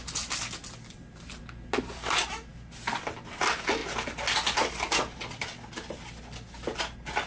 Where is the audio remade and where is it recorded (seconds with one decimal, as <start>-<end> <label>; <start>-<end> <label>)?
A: 0.0-7.3 recorded

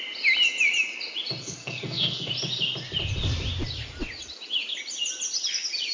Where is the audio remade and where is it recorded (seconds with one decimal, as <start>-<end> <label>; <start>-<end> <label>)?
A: 0.0-1.4 recorded; 1.4-2.3 remade; 2.3-5.9 recorded